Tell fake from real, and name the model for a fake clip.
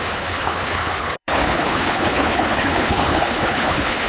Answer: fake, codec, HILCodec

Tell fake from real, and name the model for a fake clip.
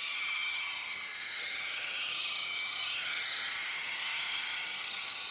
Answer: fake, vocoder, HiFi-GAN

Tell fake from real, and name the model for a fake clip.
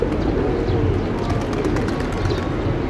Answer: real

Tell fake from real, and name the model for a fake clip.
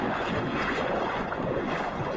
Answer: fake, vocoder, Vocos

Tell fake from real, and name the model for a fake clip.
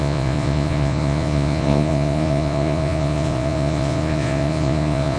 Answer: fake, vocoder, Vocos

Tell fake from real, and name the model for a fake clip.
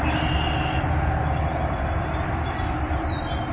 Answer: fake, vocoder, BigVGAN v2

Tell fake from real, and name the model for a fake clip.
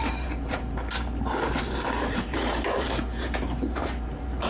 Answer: fake, vocoder, BigVGAN v2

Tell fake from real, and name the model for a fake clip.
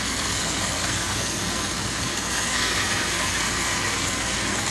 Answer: fake, codec, SNAC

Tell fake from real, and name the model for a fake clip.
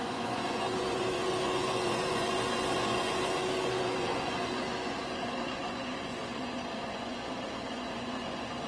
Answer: fake, vocoder, Vocos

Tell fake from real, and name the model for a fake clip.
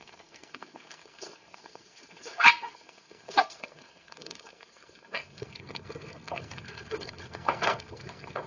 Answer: fake, codec, SNAC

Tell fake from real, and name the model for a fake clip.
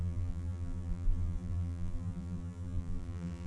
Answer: fake, vocoder, BigVGAN v2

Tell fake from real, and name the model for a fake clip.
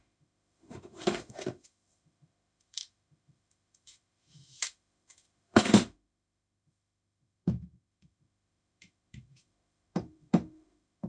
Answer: fake, autoencoder, DAC-VAE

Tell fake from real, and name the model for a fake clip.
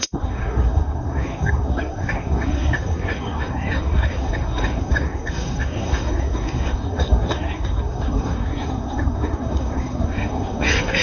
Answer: fake, codec, SNAC